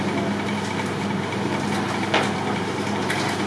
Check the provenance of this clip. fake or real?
real